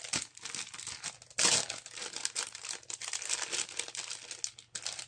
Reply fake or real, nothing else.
real